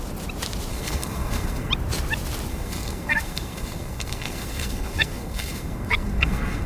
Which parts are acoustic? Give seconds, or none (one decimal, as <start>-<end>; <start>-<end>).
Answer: 0.0-0.7; 1.7-2.5